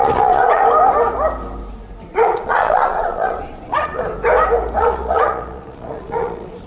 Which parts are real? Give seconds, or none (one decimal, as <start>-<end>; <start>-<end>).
0.6-2.1; 4.0-4.8

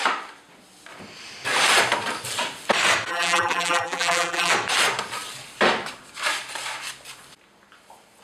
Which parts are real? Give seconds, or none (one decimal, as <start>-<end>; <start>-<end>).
0.0-3.1; 4.5-8.2

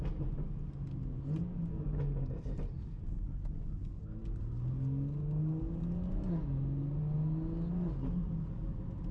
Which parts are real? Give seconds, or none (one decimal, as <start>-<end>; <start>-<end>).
0.0-9.1

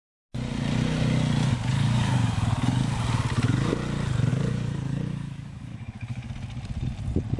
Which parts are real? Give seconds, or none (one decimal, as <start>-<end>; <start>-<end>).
0.0-1.5; 3.7-4.3; 6.3-7.4

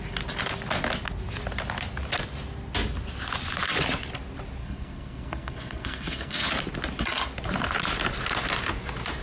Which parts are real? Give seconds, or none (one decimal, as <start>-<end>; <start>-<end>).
0.0-4.6; 6.5-9.2

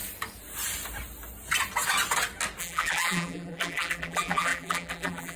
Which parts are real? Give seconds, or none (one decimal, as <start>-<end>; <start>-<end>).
0.0-2.6

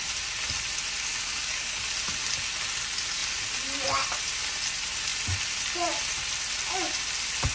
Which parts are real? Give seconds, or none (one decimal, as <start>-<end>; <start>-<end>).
0.0-1.1; 1.8-7.5